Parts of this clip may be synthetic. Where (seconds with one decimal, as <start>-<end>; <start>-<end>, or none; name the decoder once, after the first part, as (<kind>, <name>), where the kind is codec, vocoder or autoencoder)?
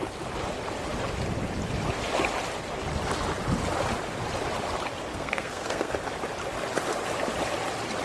5.1-5.9 (codec, SNAC)